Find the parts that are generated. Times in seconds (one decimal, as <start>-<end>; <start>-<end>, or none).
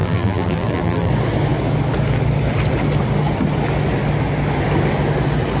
0.0-1.1